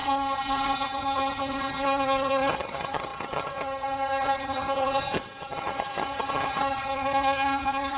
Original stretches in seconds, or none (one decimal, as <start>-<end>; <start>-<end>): none